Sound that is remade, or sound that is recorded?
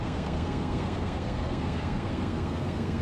remade